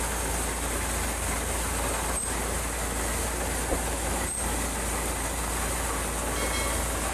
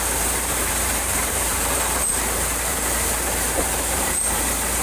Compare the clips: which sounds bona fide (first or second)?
first